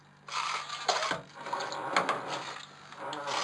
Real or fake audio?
real